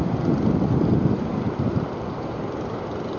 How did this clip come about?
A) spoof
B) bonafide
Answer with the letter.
A